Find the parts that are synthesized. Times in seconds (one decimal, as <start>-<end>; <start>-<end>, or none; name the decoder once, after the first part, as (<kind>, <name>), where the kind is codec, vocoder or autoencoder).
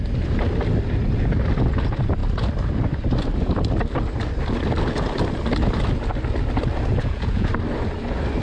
6.9-7.5 (vocoder, Vocos)